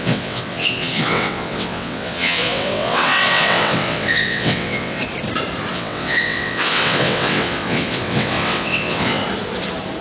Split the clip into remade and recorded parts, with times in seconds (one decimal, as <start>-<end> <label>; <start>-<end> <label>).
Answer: 0.0-5.0 remade; 5.0-5.7 recorded; 5.7-9.2 remade; 9.2-10.0 recorded